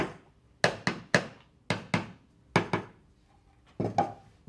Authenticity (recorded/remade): recorded